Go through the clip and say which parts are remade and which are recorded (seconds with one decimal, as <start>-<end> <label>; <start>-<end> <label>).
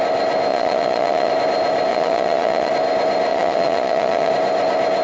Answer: 0.0-0.5 recorded; 0.5-1.3 remade; 1.3-1.9 recorded; 1.9-2.7 remade; 2.7-3.3 recorded; 3.3-4.3 remade; 4.3-5.0 recorded